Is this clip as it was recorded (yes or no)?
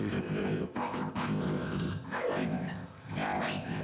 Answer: no